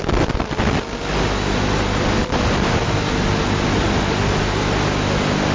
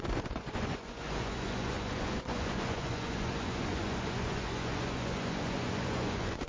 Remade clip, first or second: second